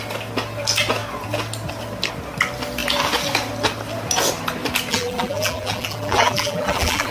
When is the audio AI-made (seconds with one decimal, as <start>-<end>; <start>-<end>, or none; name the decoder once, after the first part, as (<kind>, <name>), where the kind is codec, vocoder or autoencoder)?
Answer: 4.9-7.1 (vocoder, BigVGAN v2)